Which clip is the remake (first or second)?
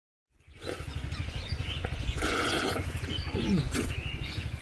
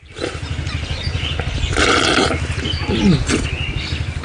first